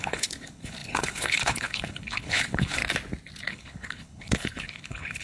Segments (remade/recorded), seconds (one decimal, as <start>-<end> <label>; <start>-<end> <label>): 0.0-2.8 remade; 2.8-3.5 recorded; 3.5-5.2 remade